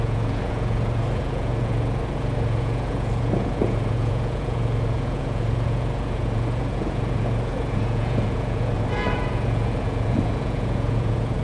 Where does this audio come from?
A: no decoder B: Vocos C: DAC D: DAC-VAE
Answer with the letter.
B